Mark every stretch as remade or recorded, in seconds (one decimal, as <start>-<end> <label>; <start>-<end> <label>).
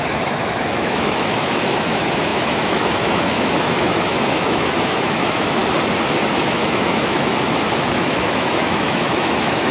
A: 0.0-5.6 remade; 5.6-6.4 recorded; 6.4-9.7 remade